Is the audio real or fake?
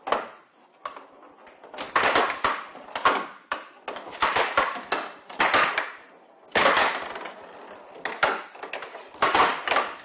real